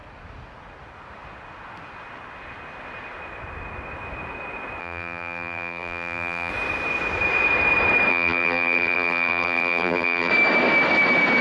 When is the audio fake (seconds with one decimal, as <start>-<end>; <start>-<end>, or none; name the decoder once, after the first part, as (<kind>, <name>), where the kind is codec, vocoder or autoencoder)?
4.8-6.5 (vocoder, BigVGAN v2); 8.1-10.3